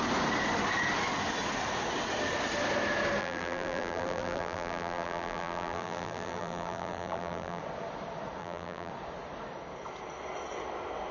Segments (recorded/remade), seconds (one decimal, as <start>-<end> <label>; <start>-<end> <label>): 0.0-3.2 recorded; 3.2-7.6 remade; 7.6-8.4 recorded; 8.4-8.9 remade; 8.9-11.1 recorded